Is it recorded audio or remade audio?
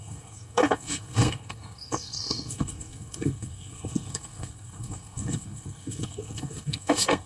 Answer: remade